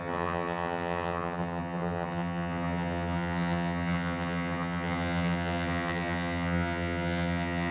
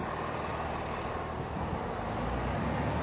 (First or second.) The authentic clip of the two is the second